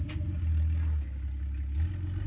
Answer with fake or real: real